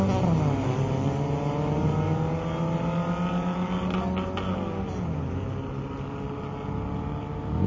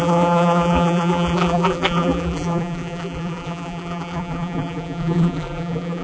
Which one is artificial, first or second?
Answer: second